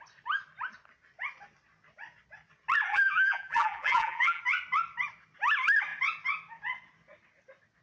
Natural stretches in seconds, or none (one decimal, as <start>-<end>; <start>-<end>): 0.0-2.9; 4.4-7.8